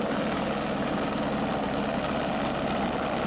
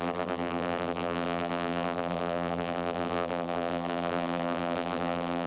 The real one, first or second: first